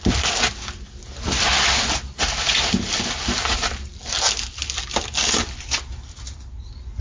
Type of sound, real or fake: real